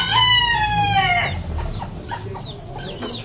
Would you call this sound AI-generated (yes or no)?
no